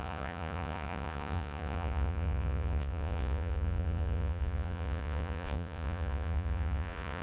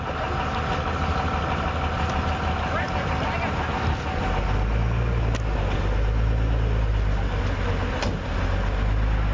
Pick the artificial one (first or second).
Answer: first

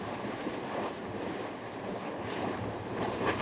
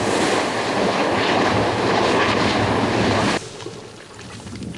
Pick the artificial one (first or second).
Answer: first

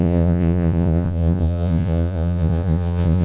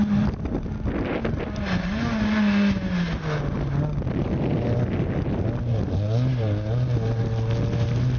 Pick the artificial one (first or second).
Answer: first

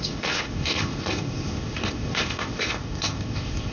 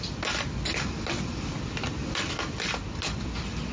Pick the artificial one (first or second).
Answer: first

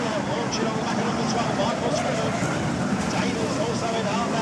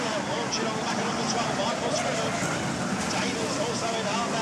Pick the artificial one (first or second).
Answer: first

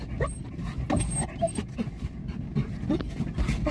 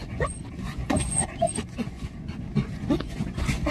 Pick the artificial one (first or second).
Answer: second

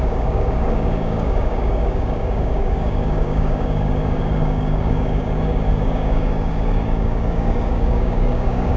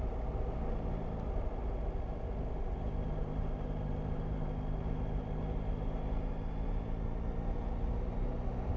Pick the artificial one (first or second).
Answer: first